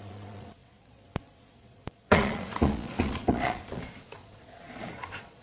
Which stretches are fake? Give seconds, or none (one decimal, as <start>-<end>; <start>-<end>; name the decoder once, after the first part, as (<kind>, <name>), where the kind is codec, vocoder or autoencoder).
0.0-5.4 (vocoder, Vocos)